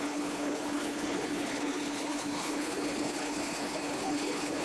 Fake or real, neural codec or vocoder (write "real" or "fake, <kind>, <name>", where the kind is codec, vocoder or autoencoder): fake, codec, HILCodec